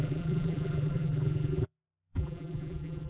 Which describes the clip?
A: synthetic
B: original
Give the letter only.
A